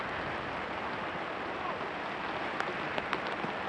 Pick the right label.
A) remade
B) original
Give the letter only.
B